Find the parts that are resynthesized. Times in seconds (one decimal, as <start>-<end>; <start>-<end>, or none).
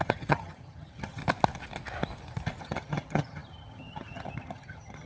0.0-1.2; 2.6-5.1